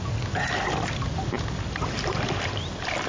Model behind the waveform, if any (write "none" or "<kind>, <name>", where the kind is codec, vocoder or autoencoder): none